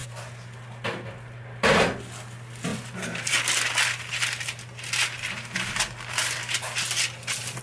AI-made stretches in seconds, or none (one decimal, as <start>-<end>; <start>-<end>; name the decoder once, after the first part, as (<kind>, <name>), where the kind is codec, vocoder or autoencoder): none